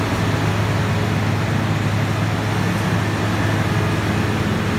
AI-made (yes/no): no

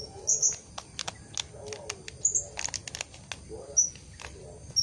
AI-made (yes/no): no